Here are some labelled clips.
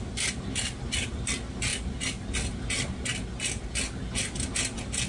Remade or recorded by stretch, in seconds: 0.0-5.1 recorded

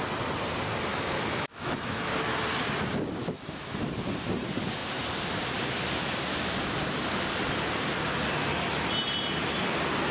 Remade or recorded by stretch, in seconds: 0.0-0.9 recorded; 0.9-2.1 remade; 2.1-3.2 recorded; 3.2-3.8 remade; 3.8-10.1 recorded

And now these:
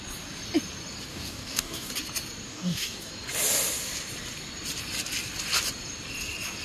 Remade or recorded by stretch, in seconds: 0.0-1.1 recorded; 1.1-1.9 remade; 1.9-2.5 recorded; 2.5-3.1 remade; 3.1-6.6 recorded

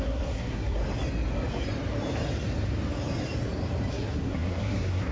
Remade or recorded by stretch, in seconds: 0.0-0.8 remade; 0.8-3.9 recorded; 3.9-5.1 remade

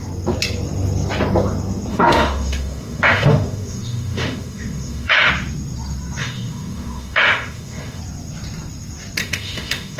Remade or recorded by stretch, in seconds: 0.0-1.9 recorded; 1.9-5.3 remade; 5.3-6.2 recorded; 6.2-8.0 remade; 8.0-9.2 recorded; 9.2-10.0 remade

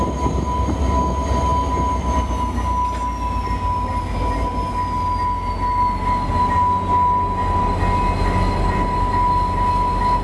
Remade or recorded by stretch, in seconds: 0.0-10.2 recorded

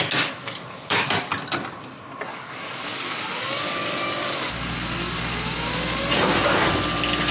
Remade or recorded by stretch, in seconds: 0.0-0.4 recorded; 0.4-1.1 remade; 1.1-2.3 recorded; 2.3-4.6 remade; 4.6-7.3 recorded